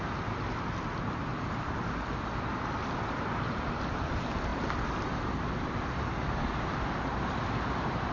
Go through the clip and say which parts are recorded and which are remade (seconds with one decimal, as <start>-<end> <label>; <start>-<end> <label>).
0.0-1.3 recorded; 1.3-3.4 remade; 3.4-4.5 recorded; 4.5-8.1 remade